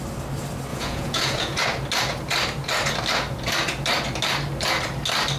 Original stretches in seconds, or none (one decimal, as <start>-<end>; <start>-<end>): 0.0-0.7; 1.6-5.4